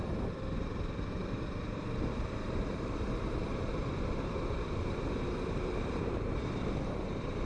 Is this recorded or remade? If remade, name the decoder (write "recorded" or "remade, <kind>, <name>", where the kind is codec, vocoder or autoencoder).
remade, vocoder, BigVGAN v2